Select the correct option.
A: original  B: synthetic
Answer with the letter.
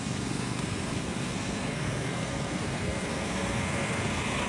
B